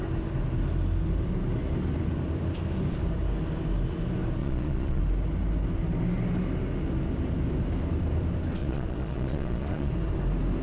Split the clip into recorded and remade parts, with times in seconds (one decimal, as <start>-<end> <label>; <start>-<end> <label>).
0.0-4.4 recorded; 4.4-5.0 remade; 5.0-8.6 recorded; 8.6-9.9 remade; 9.9-10.6 recorded